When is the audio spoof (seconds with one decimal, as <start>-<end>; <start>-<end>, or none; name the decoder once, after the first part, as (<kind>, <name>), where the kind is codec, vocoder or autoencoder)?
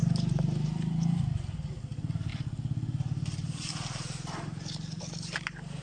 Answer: none